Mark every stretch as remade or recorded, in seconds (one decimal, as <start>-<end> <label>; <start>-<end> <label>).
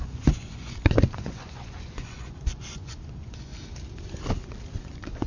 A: 0.0-3.5 remade; 3.5-4.8 recorded; 4.8-5.3 remade